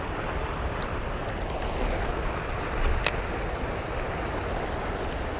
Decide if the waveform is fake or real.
real